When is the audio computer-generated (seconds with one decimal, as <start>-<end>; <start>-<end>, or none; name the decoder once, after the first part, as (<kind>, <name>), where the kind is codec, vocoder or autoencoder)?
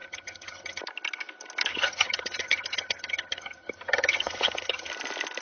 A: 0.0-0.8 (vocoder, HiFi-GAN); 1.7-4.9